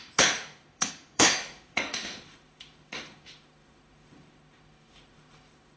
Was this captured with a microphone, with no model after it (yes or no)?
no